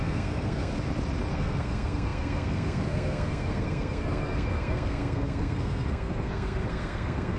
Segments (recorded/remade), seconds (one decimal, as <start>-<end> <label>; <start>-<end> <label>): 0.0-0.7 remade; 0.7-1.3 recorded; 1.3-7.4 remade